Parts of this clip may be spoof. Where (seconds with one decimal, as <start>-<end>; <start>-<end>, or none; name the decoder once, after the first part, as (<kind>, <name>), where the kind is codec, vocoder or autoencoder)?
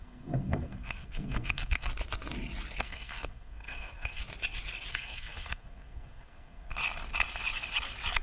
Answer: 0.0-1.9 (codec, SNAC); 2.8-4.2; 4.9-6.7